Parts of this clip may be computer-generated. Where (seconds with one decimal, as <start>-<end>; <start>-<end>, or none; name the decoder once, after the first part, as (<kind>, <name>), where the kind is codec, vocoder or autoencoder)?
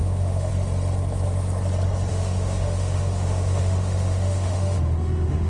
0.0-0.5 (autoencoder, DAC-VAE); 2.1-5.5